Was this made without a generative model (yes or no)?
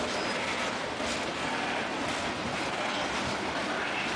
yes